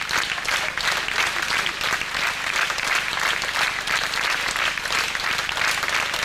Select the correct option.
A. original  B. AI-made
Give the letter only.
A